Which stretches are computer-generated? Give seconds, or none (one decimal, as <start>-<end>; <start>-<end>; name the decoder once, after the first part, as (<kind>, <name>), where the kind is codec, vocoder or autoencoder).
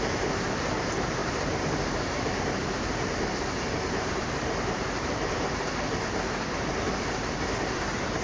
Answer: 1.2-5.4 (vocoder, BigVGAN v2)